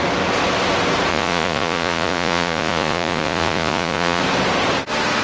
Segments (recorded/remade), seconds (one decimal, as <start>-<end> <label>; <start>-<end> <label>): 0.0-1.1 recorded; 1.1-4.2 remade; 4.2-5.2 recorded

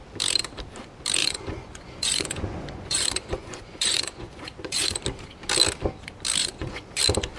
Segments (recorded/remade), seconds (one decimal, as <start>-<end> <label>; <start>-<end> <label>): 0.0-1.2 recorded; 1.2-5.0 remade; 5.0-6.4 recorded; 6.4-7.0 remade; 7.0-7.4 recorded

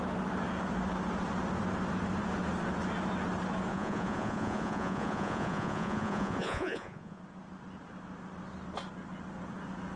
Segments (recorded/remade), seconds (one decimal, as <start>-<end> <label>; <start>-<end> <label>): 0.0-3.7 recorded; 3.7-7.2 remade; 7.2-10.0 recorded

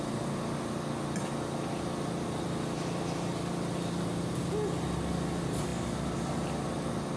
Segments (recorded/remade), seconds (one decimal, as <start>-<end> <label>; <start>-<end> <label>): 0.0-7.2 recorded

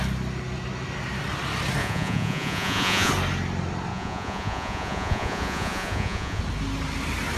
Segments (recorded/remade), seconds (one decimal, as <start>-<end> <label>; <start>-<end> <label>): 0.0-1.8 recorded; 1.8-3.1 remade; 3.1-3.9 recorded; 3.9-6.4 remade; 6.4-7.4 recorded

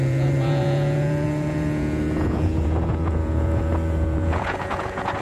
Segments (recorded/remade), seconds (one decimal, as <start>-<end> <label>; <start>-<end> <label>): 0.0-5.2 remade